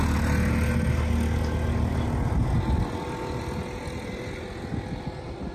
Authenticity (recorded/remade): recorded